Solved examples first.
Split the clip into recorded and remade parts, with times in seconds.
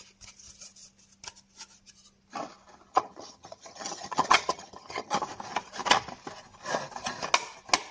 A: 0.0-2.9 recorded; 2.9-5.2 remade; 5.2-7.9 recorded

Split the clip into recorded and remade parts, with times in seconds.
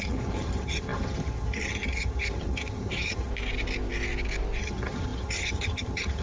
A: 0.0-3.3 remade; 3.3-4.6 recorded; 4.6-6.2 remade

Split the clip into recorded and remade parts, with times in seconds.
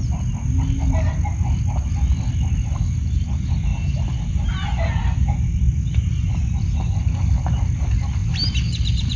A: 0.0-9.2 recorded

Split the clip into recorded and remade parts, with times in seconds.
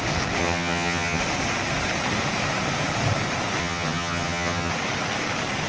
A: 0.0-0.4 recorded; 0.4-1.2 remade; 1.2-3.6 recorded; 3.6-4.7 remade; 4.7-5.7 recorded